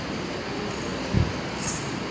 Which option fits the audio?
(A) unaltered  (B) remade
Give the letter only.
A